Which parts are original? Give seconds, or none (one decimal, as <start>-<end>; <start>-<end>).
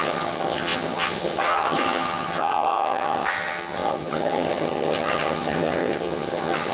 none